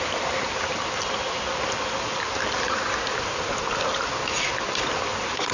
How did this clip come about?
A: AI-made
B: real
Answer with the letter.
B